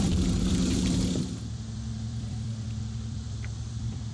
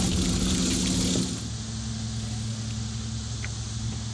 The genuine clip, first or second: second